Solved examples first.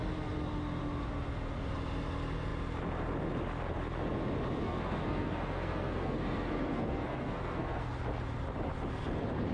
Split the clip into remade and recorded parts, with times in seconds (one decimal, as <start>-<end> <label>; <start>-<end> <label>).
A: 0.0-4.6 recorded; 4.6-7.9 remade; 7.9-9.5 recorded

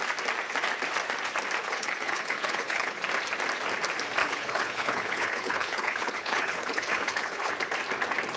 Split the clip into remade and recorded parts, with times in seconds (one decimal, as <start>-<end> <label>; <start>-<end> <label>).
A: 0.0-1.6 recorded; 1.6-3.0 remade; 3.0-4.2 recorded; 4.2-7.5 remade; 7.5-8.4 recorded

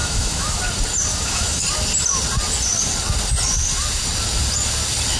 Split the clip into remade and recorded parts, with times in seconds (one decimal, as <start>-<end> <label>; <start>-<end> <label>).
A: 0.0-0.6 remade; 0.6-1.1 recorded; 1.1-1.6 remade; 1.6-5.2 recorded

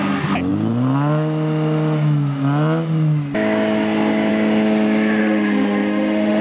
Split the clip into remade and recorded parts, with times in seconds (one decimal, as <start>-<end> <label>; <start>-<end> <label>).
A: 0.0-5.2 recorded; 5.2-6.4 remade

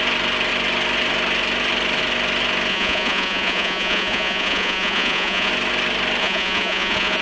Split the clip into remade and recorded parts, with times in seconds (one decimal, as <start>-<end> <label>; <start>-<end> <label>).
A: 0.0-2.7 recorded; 2.7-5.5 remade; 5.5-6.2 recorded; 6.2-7.2 remade

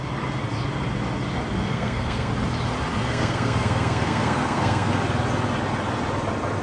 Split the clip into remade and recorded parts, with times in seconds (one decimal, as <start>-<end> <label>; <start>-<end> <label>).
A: 0.0-1.7 recorded; 1.7-2.3 remade; 2.3-3.0 recorded; 3.0-4.9 remade; 4.9-6.6 recorded